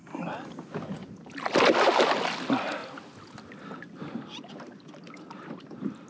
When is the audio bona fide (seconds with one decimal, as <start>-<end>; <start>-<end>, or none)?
0.0-6.1